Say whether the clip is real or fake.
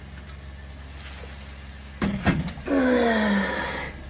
real